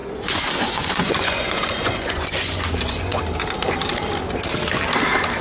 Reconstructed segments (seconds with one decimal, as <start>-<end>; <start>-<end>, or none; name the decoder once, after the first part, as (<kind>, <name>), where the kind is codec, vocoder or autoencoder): 0.0-3.2 (vocoder, Vocos)